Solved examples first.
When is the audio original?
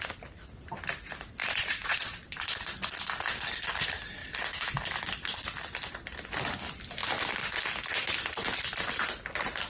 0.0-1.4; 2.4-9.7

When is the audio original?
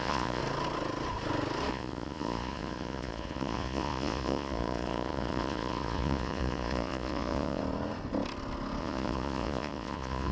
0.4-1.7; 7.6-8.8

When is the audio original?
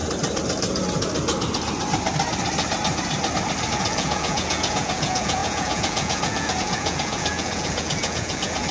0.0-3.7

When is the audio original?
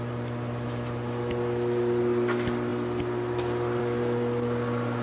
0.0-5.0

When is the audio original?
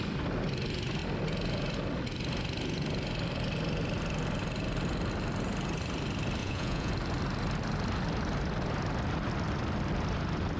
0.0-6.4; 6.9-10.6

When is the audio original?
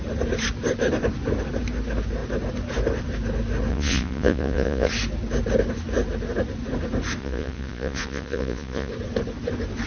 0.0-3.7; 4.9-7.2; 8.9-9.9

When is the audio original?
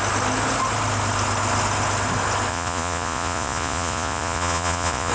0.0-2.5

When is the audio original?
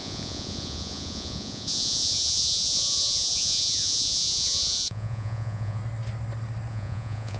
5.8-6.7